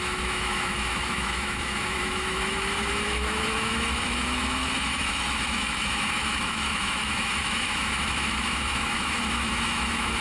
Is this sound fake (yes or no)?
yes